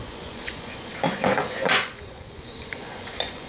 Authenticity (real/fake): fake